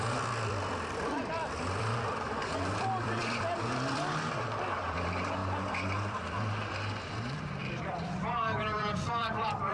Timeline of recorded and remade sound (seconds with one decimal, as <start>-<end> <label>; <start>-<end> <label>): 0.0-5.4 remade; 5.4-7.0 recorded; 7.0-7.6 remade; 7.6-9.1 recorded; 9.1-9.7 remade